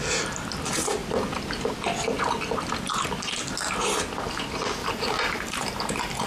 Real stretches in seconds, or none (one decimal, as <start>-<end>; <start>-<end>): 0.0-4.8